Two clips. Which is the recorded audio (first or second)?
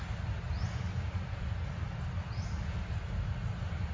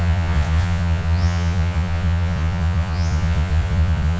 first